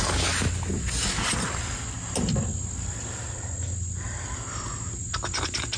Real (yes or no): yes